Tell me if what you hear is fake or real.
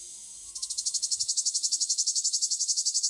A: fake